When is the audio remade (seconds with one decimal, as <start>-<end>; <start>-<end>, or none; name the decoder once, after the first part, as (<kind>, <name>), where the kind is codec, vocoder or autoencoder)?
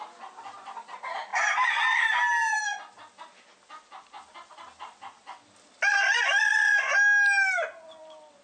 none